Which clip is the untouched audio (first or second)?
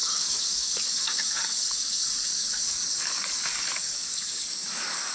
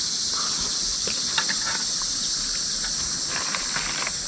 second